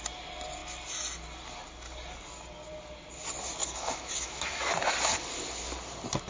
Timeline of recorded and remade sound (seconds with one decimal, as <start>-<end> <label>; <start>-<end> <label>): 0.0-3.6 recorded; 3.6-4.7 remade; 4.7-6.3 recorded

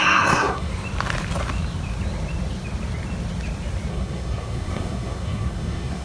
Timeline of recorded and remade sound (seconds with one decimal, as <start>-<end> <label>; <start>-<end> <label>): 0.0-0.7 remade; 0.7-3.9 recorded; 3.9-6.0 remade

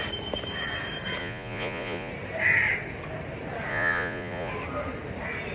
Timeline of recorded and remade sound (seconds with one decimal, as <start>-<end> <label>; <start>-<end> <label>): 0.0-1.2 recorded; 1.2-2.1 remade; 2.1-3.7 recorded; 3.7-4.5 remade; 4.5-5.5 recorded